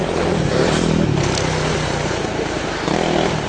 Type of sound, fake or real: real